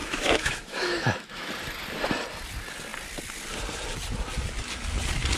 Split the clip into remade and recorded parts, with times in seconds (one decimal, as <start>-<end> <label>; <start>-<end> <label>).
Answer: 0.0-1.5 remade; 1.5-5.4 recorded